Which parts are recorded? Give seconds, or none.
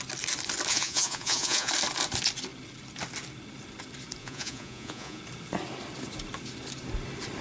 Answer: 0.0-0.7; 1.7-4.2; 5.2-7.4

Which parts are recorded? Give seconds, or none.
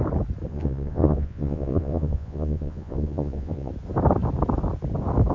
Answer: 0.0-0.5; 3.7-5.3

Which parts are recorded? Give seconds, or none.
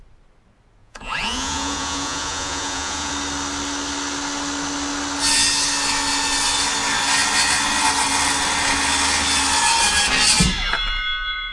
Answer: 0.0-0.8; 3.1-11.5